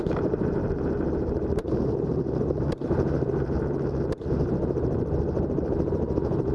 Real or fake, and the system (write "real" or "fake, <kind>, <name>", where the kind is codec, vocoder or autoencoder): fake, vocoder, BigVGAN v2